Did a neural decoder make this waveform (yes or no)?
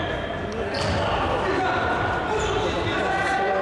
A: no